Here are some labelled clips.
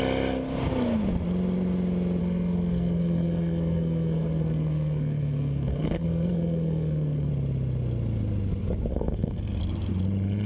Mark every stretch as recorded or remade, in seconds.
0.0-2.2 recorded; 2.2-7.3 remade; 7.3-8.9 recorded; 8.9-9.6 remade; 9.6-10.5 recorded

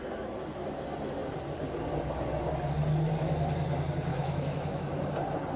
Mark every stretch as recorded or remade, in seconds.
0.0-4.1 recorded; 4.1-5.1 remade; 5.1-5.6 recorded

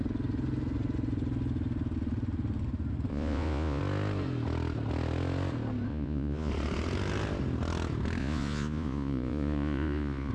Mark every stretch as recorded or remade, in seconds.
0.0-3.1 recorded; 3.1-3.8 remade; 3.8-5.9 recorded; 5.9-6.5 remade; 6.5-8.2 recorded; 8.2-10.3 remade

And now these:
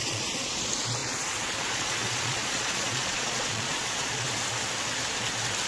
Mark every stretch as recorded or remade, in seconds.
0.0-0.6 remade; 0.6-1.0 recorded; 1.0-4.3 remade; 4.3-5.7 recorded

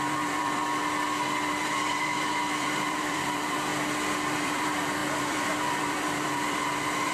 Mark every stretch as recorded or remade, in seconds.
0.0-0.6 remade; 0.6-1.5 recorded; 1.5-3.7 remade; 3.7-4.4 recorded; 4.4-7.1 remade

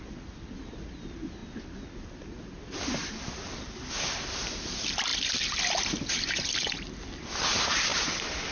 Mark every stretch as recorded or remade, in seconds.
0.0-7.9 recorded; 7.9-8.5 remade

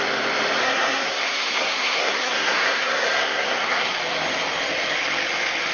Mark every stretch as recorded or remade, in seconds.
0.0-0.6 recorded; 0.6-4.0 remade; 4.0-5.7 recorded

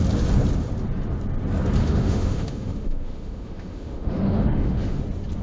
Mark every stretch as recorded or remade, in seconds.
0.0-1.8 recorded; 1.8-5.0 remade; 5.0-5.4 recorded